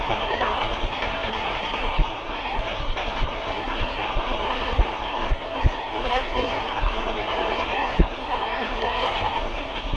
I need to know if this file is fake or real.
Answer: fake